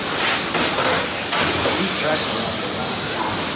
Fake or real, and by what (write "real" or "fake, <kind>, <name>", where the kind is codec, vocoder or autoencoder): real